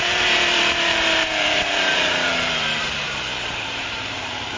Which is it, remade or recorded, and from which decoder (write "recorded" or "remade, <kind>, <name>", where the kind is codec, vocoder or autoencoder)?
remade, vocoder, BigVGAN v2